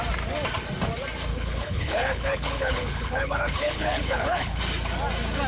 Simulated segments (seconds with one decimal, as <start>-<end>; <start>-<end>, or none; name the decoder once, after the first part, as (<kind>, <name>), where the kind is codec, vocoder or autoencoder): 1.3-4.6 (codec, HILCodec)